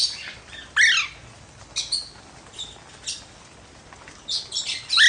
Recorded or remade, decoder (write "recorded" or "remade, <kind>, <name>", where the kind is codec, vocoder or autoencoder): recorded